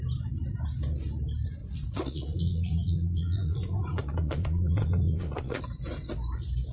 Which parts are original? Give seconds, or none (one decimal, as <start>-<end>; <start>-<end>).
0.0-1.6; 5.6-6.7